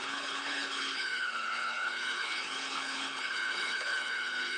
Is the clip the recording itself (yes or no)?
no